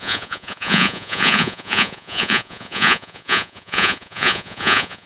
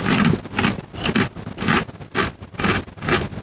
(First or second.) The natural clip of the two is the second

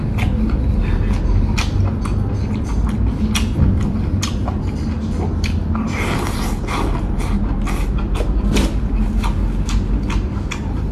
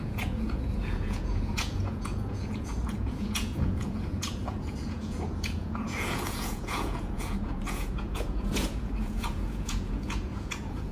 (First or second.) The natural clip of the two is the first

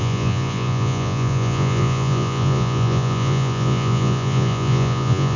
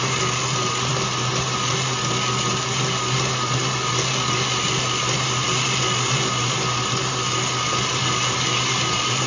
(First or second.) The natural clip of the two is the second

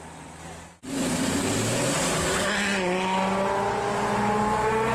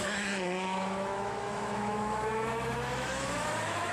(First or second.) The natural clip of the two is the first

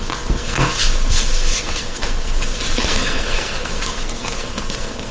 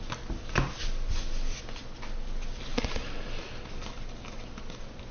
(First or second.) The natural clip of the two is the second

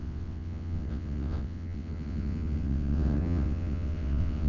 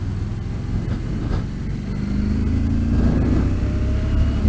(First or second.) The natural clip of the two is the second